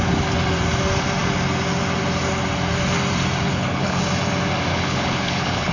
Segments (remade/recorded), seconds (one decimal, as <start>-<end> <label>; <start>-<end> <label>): 0.0-3.5 recorded; 3.5-4.0 remade; 4.0-4.7 recorded; 4.7-5.7 remade